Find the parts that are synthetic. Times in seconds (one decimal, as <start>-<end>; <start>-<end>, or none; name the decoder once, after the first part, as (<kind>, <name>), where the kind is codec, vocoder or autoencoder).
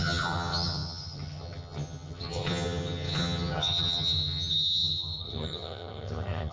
0.0-6.5 (vocoder, HiFi-GAN)